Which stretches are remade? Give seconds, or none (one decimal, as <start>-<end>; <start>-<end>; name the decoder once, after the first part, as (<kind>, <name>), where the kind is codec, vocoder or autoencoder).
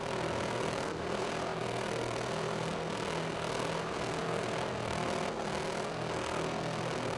0.0-7.2 (codec, SNAC)